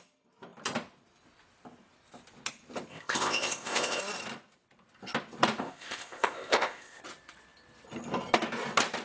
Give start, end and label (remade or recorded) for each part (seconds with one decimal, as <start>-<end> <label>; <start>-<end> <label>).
0.0-2.9 recorded; 2.9-4.0 remade; 4.0-5.6 recorded; 5.6-7.0 remade; 7.0-9.0 recorded